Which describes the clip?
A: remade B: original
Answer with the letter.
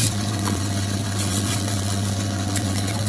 A